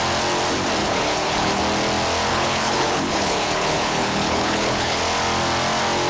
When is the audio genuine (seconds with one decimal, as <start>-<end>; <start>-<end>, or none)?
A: 0.0-0.8; 1.6-2.3; 5.0-6.1